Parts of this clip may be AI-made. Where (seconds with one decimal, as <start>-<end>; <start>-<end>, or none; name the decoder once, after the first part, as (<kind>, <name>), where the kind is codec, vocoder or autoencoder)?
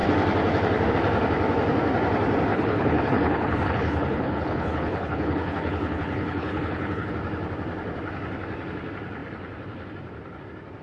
2.5-7.1 (codec, HILCodec)